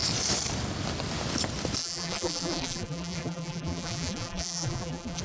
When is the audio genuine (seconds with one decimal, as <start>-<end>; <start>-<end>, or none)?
0.0-1.8